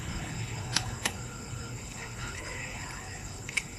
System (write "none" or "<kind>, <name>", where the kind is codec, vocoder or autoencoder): codec, HILCodec